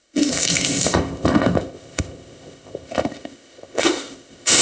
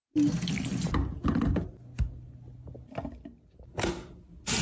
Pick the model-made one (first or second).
first